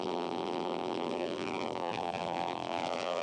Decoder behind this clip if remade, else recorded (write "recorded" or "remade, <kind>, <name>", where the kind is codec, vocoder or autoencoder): remade, vocoder, BigVGAN v2